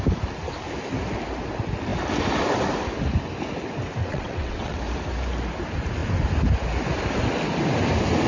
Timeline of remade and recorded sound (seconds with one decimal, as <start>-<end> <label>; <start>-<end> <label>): 0.0-4.0 recorded; 4.0-4.8 remade; 4.8-8.3 recorded